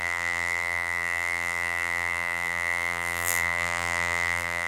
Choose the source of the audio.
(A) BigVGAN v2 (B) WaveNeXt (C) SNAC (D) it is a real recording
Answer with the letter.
A